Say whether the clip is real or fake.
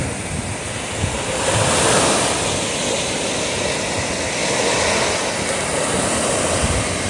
real